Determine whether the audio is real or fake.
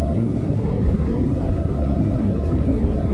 fake